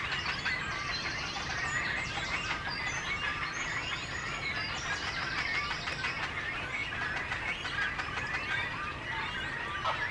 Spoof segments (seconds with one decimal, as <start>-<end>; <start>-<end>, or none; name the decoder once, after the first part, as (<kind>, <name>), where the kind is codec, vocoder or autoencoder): none